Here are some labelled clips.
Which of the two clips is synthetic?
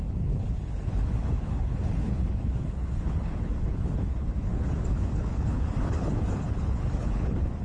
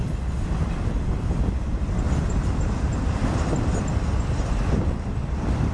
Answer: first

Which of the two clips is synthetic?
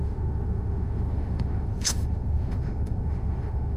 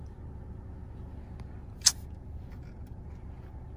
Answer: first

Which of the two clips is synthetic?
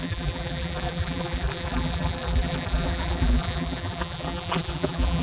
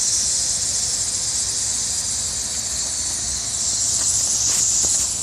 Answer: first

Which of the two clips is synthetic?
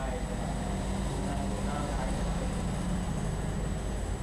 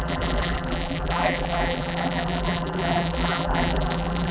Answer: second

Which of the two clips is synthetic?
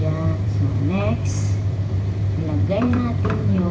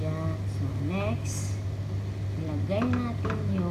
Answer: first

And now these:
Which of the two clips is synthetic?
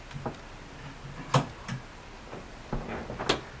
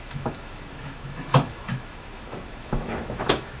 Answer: second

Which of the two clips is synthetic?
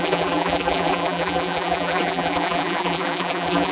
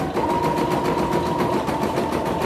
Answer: first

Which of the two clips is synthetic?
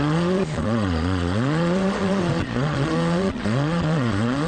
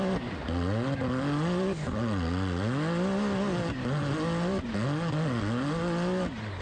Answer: first